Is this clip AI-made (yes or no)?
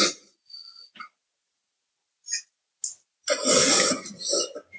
no